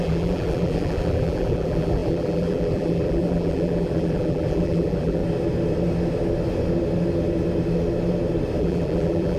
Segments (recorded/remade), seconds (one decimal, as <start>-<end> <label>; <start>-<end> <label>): 0.0-5.2 remade; 5.2-8.6 recorded; 8.6-9.4 remade